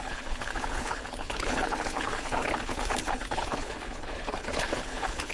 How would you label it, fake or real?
fake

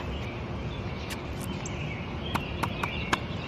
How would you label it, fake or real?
real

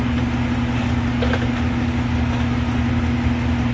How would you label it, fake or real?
real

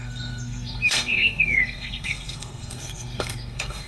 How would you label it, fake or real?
fake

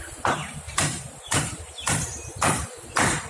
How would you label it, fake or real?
fake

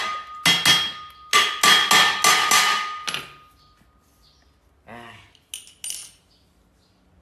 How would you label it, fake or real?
real